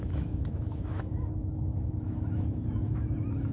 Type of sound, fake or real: fake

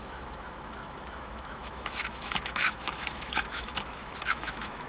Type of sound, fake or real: fake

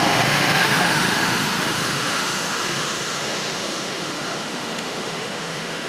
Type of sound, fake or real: fake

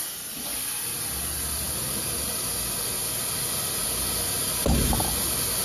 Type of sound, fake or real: real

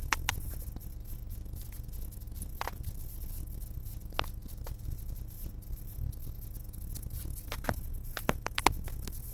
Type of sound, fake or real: real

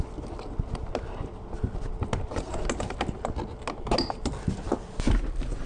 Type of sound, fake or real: real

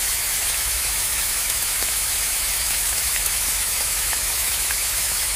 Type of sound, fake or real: fake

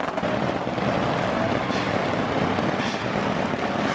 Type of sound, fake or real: real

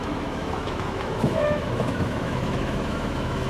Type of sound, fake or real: fake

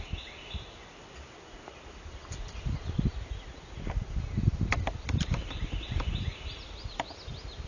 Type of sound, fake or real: real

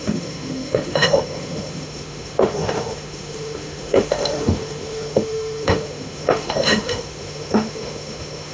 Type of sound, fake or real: fake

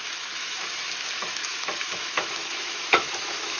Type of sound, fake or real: fake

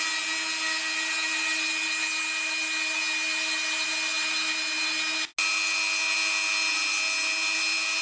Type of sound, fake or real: real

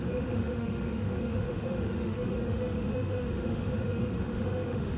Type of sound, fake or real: fake